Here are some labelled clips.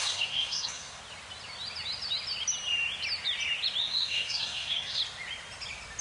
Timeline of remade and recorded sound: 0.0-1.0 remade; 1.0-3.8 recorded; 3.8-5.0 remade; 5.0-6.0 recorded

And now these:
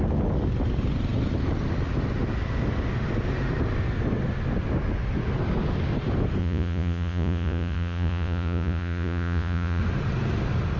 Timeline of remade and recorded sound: 0.0-6.4 recorded; 6.4-9.8 remade; 9.8-10.8 recorded

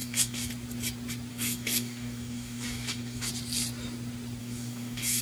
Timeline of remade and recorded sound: 0.0-0.5 remade; 0.5-1.3 recorded; 1.3-3.3 remade; 3.3-4.4 recorded; 4.4-5.2 remade

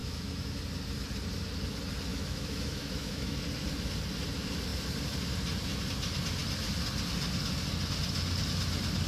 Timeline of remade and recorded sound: 0.0-0.6 remade; 0.6-2.1 recorded; 2.1-3.4 remade; 3.4-9.1 recorded

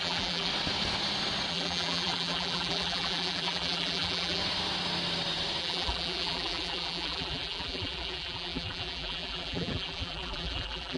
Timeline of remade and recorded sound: 0.0-0.5 remade; 0.5-1.5 recorded; 1.5-4.4 remade; 4.4-5.6 recorded; 5.6-11.0 remade

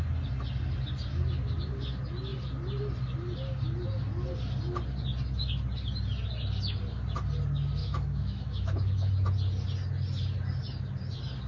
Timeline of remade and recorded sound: 0.0-7.8 recorded; 7.8-9.1 remade; 9.1-11.5 recorded

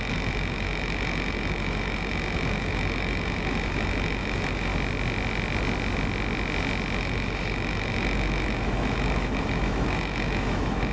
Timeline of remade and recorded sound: 0.0-4.7 remade; 4.7-7.0 recorded; 7.0-10.9 remade

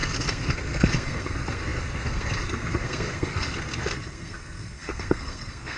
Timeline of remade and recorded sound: 0.0-5.8 remade